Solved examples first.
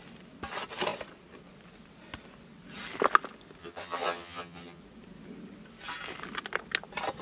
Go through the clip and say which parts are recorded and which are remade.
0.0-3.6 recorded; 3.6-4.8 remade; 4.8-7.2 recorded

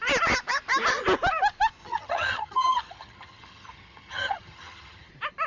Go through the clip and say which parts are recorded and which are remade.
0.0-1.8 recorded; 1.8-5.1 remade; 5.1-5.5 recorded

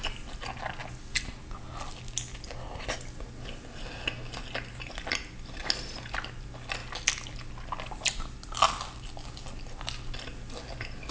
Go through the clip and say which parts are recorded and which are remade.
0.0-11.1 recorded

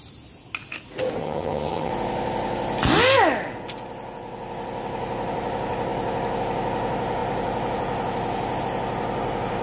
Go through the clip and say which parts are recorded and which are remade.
0.0-1.2 recorded; 1.2-1.9 remade; 1.9-9.6 recorded

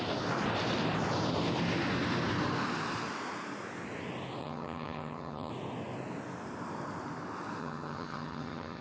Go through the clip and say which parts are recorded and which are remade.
0.0-4.4 recorded; 4.4-5.5 remade; 5.5-7.6 recorded; 7.6-8.8 remade